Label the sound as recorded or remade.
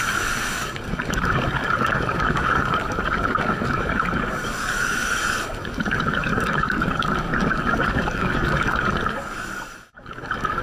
remade